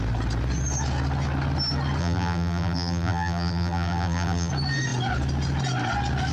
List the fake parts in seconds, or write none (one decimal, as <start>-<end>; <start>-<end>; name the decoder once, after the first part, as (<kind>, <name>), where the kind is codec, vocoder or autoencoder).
2.0-4.5 (vocoder, BigVGAN v2)